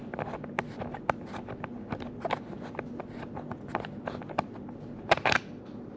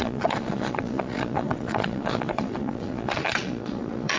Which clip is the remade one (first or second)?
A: second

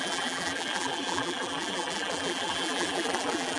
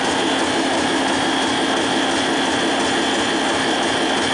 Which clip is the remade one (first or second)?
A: first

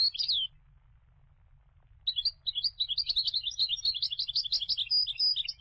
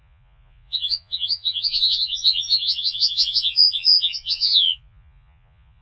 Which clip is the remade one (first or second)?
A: second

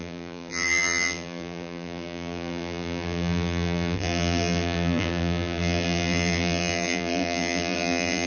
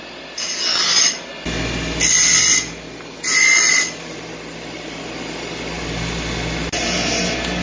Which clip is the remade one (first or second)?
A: first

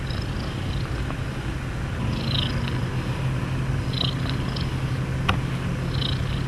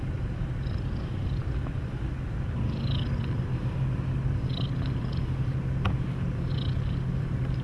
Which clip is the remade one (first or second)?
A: second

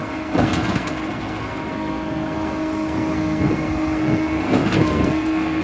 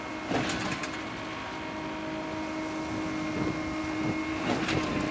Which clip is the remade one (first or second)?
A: first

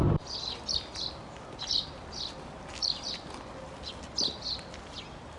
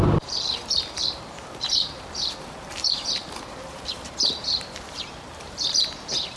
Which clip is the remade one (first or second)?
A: second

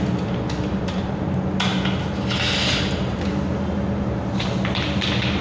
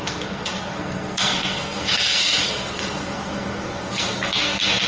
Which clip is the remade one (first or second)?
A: second